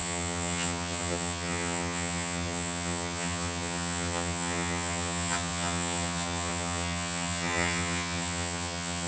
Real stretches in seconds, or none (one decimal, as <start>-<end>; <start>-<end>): none